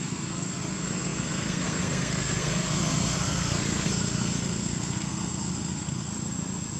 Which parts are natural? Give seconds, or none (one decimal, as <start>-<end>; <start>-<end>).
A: 6.1-6.8